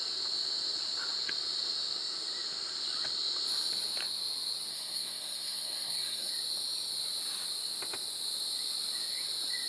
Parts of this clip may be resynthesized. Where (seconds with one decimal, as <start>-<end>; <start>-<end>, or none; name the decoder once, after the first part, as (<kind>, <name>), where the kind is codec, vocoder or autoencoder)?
4.7-6.3 (codec, SNAC)